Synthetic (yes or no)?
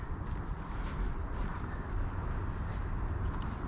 no